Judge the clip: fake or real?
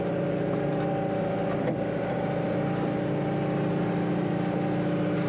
real